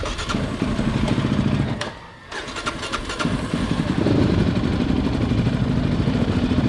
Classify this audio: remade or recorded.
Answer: remade